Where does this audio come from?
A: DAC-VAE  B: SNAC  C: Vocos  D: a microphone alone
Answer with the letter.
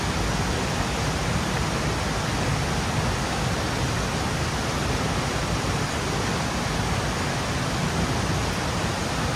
D